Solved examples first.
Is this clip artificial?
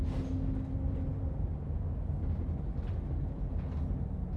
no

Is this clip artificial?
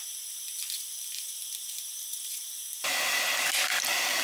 no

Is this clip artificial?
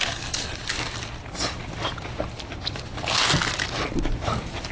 no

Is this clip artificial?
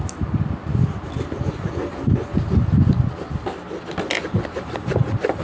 no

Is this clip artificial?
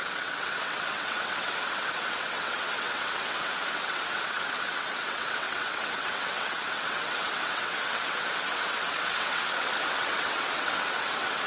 yes